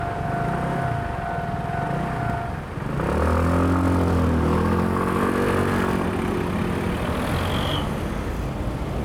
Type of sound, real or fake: real